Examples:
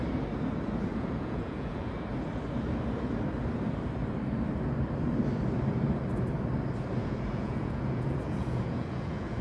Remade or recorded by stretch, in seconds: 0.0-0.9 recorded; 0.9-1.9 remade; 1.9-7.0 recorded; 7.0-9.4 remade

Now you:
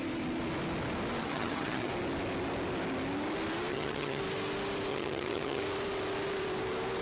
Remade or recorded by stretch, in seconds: 0.0-1.2 recorded; 1.2-1.9 remade; 1.9-3.7 recorded; 3.7-4.2 remade; 4.2-4.9 recorded; 4.9-5.6 remade; 5.6-7.0 recorded

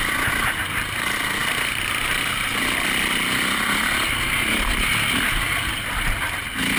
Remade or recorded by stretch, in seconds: 0.0-6.8 recorded